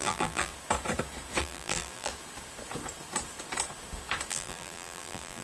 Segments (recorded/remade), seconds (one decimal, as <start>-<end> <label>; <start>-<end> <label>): 0.0-0.5 remade; 0.5-1.4 recorded; 1.4-2.1 remade; 2.1-4.3 recorded; 4.3-5.4 remade